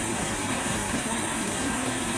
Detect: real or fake fake